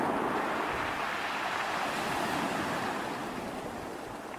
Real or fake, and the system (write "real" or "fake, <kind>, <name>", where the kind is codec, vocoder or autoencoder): real